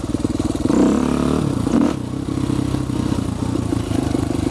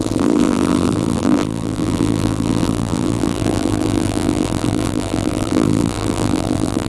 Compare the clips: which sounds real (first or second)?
first